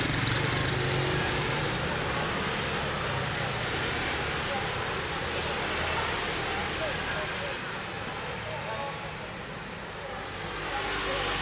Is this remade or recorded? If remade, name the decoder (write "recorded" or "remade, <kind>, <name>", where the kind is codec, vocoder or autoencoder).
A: recorded